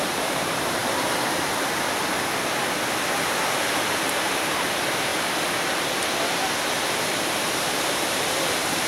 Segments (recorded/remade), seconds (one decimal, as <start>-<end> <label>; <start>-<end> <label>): 0.0-0.8 remade; 0.8-3.6 recorded; 3.6-5.1 remade; 5.1-6.9 recorded; 6.9-8.9 remade